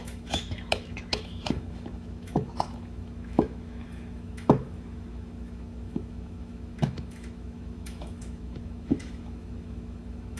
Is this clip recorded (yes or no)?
no